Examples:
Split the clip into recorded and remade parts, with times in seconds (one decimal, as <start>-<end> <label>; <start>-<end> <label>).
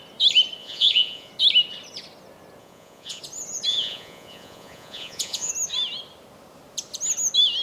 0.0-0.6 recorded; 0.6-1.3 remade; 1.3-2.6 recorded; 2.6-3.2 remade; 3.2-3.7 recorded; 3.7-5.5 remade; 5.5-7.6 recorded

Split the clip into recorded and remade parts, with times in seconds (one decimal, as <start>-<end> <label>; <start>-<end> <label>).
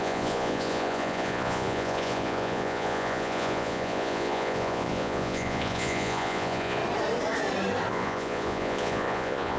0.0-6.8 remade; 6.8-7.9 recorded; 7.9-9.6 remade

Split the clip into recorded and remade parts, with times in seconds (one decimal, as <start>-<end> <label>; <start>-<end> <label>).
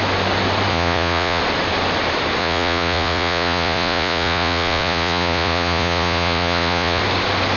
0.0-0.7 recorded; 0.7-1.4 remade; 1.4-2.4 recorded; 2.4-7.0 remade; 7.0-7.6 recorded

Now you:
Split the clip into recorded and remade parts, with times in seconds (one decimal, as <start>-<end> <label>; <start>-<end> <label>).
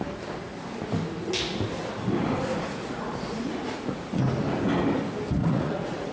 0.0-2.5 recorded; 2.5-4.2 remade; 4.2-5.4 recorded; 5.4-6.1 remade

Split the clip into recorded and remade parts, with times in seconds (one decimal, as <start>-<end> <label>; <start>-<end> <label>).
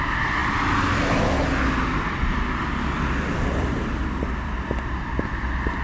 0.0-5.8 recorded